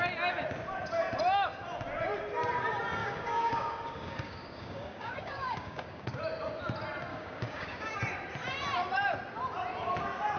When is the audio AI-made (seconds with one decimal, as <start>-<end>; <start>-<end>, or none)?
3.0-6.2; 7.1-8.0